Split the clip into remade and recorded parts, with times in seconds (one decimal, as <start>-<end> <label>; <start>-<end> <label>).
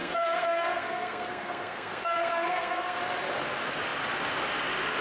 0.0-3.0 remade; 3.0-5.0 recorded